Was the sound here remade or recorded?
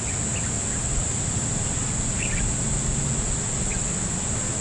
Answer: recorded